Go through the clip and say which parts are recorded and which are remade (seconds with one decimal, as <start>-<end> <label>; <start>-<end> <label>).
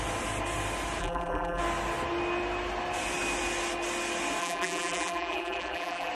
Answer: 0.0-1.0 recorded; 1.0-1.6 remade; 1.6-4.4 recorded; 4.4-6.1 remade